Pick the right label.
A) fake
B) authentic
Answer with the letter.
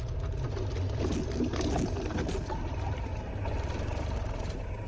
B